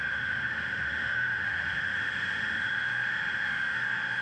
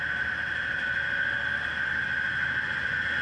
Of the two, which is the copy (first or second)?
first